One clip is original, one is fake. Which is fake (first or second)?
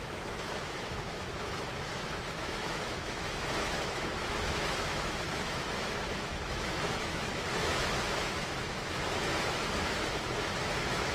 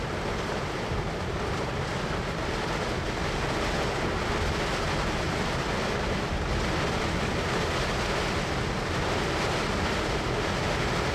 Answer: first